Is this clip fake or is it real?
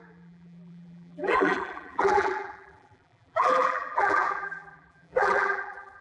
fake